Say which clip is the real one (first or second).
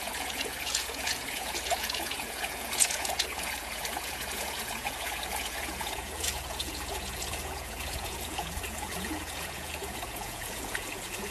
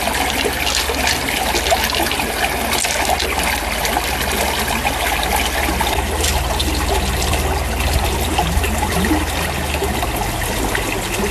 second